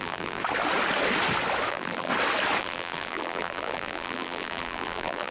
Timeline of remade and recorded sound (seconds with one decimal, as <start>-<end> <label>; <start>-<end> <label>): 0.0-0.4 remade; 0.4-1.7 recorded; 1.7-2.1 remade; 2.1-2.6 recorded; 2.6-5.3 remade